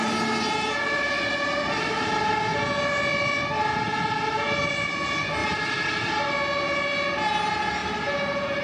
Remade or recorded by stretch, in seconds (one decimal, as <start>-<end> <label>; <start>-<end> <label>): 0.0-5.4 recorded; 5.4-6.1 remade; 6.1-7.8 recorded; 7.8-8.6 remade